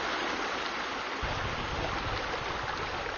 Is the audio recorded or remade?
recorded